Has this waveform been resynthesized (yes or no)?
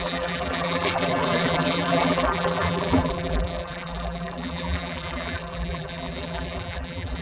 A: yes